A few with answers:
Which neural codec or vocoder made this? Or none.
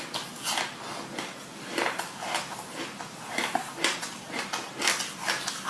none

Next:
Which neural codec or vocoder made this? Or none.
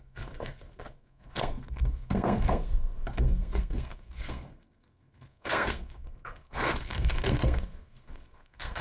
codec, SNAC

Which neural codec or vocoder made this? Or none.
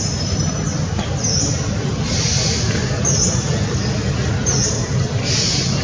none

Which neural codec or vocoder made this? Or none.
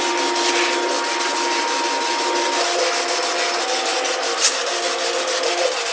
none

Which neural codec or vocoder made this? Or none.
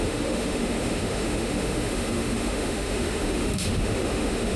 autoencoder, DAC-VAE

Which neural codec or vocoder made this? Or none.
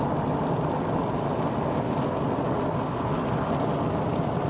none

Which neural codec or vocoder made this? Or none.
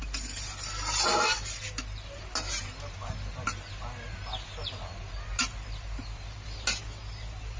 none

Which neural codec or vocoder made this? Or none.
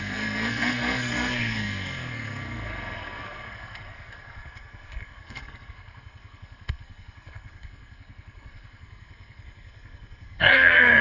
codec, SNAC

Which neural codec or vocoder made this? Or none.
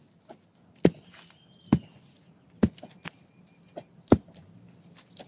none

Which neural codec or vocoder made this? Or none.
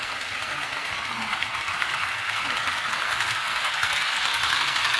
codec, SNAC